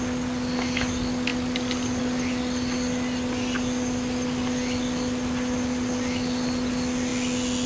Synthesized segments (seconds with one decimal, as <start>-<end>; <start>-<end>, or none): none